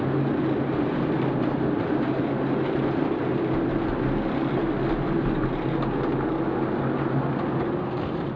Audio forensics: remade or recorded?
recorded